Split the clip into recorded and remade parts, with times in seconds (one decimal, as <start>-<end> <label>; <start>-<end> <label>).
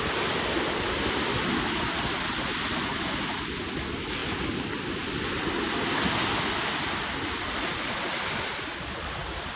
0.0-9.6 recorded